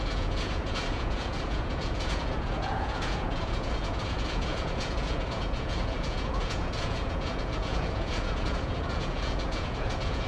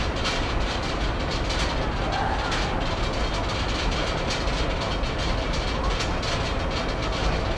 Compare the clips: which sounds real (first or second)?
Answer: second